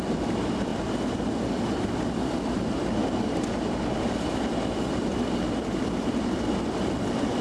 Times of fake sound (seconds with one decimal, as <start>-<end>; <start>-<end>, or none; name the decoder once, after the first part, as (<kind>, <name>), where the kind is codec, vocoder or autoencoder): 0.0-5.1 (vocoder, BigVGAN v2); 5.6-7.4